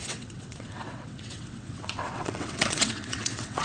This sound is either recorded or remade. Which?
remade